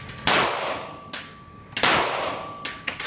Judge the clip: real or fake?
real